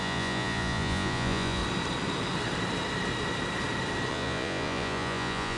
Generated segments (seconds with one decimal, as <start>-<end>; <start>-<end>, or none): 0.0-1.6; 4.1-5.6